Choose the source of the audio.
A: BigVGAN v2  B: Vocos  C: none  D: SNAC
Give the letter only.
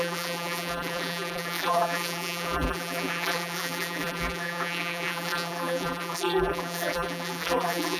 A